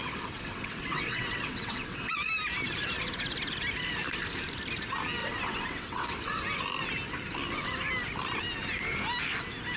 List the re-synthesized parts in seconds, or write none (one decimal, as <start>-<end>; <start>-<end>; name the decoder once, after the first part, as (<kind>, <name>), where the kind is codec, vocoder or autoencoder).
0.0-2.3 (vocoder, WaveNeXt); 5.2-6.4